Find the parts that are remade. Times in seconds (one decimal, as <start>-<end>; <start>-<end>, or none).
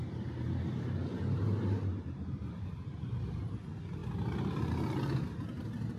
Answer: 0.0-3.6